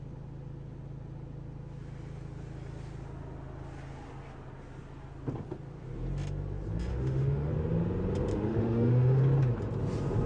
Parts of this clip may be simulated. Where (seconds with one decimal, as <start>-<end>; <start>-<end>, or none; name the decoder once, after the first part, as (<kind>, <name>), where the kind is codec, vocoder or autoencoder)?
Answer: 6.9-7.5 (autoencoder, DAC-VAE); 8.3-9.2